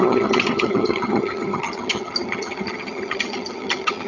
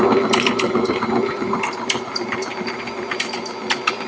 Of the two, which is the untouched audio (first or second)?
second